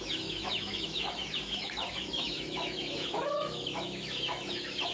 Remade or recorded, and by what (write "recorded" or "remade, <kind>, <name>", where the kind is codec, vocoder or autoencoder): remade, autoencoder, DAC-VAE